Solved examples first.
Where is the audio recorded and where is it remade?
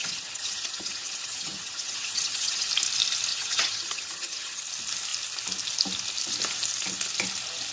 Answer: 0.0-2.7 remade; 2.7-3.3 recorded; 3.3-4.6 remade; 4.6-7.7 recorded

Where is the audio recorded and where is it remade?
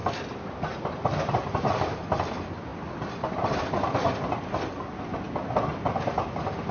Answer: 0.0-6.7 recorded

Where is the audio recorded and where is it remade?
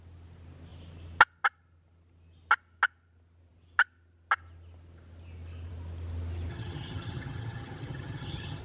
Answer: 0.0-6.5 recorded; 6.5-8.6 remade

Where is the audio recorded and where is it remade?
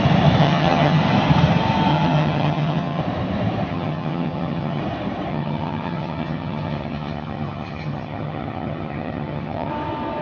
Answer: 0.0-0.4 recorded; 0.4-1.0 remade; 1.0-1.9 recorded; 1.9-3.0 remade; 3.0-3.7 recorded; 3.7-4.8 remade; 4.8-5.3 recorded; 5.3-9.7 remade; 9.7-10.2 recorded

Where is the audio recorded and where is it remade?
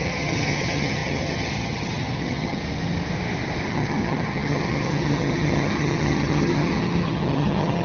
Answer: 0.0-2.6 remade; 2.6-3.7 recorded; 3.7-7.8 remade